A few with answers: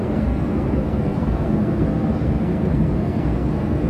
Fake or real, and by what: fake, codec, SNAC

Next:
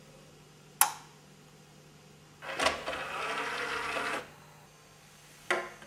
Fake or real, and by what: real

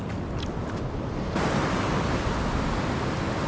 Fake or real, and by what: real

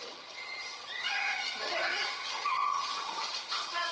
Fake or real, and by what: fake, vocoder, HiFi-GAN